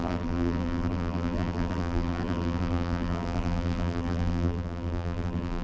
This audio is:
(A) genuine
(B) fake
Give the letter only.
B